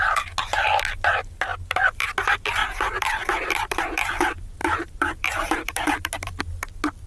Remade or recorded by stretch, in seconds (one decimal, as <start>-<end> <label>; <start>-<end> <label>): 0.0-1.5 recorded; 1.5-2.1 remade; 2.1-2.6 recorded; 2.6-4.1 remade; 4.1-4.6 recorded; 4.6-6.4 remade; 6.4-7.1 recorded